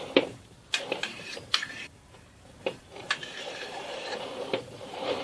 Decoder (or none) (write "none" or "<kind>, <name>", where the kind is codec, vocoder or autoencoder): vocoder, BigVGAN v2